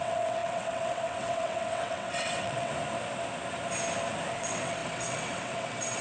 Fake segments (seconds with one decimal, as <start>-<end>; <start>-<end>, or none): 0.0-2.7; 4.3-6.0